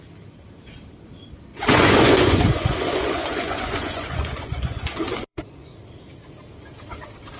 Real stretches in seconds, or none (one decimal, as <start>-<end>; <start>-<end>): 0.0-1.5; 5.7-7.4